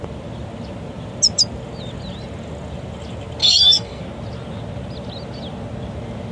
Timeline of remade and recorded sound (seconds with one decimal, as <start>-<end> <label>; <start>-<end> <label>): 0.0-3.4 recorded; 3.4-4.0 remade; 4.0-6.3 recorded